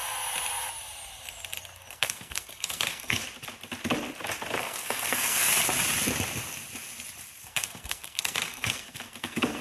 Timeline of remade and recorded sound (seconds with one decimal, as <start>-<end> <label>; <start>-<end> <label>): 0.0-1.9 recorded; 1.9-3.2 remade; 3.2-4.6 recorded; 4.6-5.5 remade; 5.5-7.4 recorded; 7.4-9.6 remade